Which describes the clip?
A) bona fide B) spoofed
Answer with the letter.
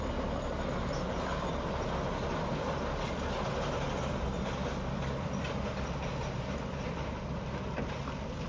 A